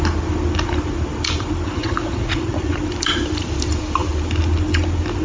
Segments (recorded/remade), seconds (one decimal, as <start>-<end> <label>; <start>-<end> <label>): 0.0-1.8 recorded; 1.8-2.8 remade; 2.8-5.2 recorded